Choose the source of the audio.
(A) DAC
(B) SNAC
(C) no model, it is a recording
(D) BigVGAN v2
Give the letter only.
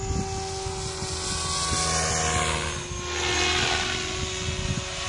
C